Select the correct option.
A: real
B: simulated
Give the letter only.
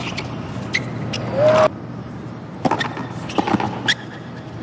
A